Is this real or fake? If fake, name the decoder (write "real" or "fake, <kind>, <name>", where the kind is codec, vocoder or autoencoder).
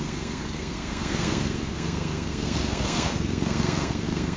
fake, codec, SNAC